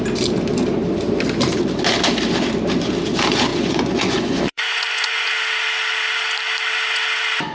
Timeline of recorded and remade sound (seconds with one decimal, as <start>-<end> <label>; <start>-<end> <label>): 0.0-3.5 recorded; 3.5-5.3 remade; 5.3-7.5 recorded